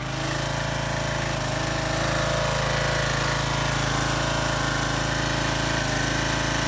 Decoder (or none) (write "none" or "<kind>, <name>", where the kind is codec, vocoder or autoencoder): none